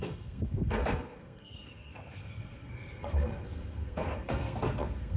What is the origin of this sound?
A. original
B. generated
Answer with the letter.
B